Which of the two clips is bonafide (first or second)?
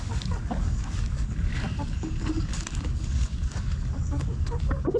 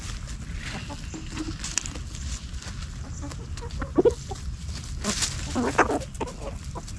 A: second